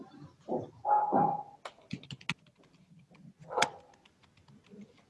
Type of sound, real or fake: real